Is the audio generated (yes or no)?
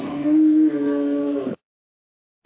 yes